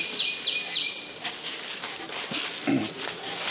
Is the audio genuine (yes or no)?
yes